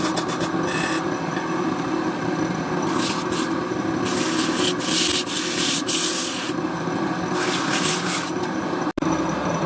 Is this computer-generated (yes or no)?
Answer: no